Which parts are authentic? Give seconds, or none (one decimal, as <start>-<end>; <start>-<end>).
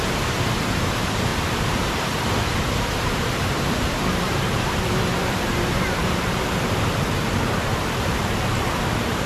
none